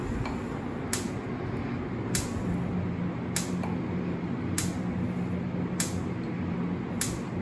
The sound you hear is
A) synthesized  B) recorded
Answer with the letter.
B